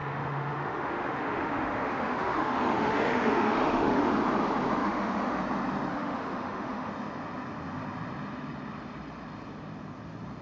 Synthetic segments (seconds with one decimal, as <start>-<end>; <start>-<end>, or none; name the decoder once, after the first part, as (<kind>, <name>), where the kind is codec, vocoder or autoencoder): 0.0-4.1 (autoencoder, DAC-VAE); 4.8-5.4; 5.9-6.9

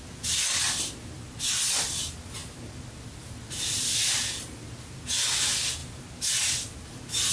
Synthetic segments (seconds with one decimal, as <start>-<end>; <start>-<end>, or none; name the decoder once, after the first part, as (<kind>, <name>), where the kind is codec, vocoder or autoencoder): none

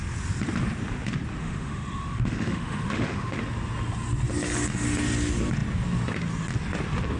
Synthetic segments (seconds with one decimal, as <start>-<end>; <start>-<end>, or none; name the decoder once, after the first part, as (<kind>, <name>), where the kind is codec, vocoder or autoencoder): 1.4-3.4 (autoencoder, DAC-VAE)

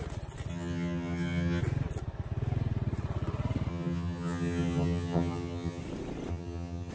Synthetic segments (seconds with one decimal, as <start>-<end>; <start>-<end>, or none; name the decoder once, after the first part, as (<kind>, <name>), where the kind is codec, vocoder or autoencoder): 0.5-1.6 (vocoder, HiFi-GAN); 3.7-5.8; 6.3-6.9

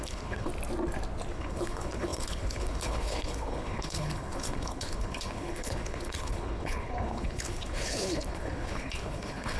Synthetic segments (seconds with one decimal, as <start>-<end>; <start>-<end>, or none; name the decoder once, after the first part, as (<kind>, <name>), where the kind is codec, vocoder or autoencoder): 0.0-0.5 (codec, HILCodec); 1.3-9.6